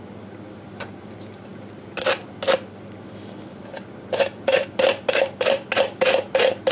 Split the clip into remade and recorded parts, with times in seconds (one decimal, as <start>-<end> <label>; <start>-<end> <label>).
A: 0.0-6.7 recorded